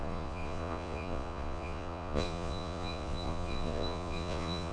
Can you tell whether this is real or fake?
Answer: fake